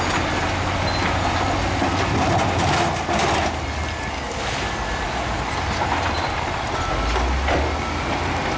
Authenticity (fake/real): real